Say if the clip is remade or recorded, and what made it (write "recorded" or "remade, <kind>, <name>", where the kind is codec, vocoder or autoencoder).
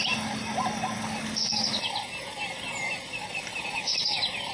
recorded